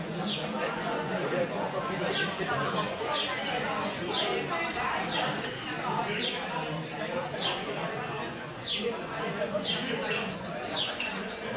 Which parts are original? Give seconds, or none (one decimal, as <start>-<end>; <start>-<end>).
4.2-7.1